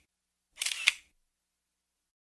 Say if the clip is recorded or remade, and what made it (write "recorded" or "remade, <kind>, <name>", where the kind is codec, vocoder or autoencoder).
recorded